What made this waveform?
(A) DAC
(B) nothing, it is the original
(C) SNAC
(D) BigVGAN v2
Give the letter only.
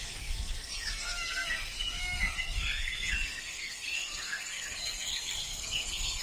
C